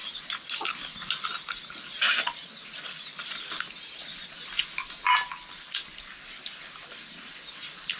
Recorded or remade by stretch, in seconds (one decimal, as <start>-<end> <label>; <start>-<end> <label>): 0.0-8.0 recorded